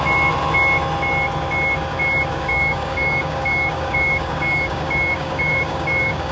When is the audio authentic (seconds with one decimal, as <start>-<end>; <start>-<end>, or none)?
0.0-2.3